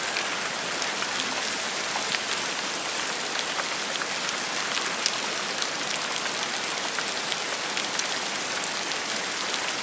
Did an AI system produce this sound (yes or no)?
no